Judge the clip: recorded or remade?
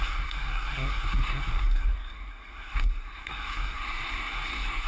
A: remade